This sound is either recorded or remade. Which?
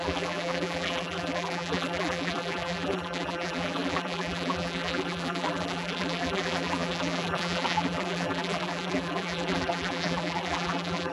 remade